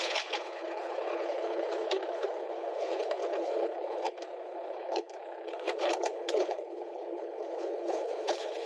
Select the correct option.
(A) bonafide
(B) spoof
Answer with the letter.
B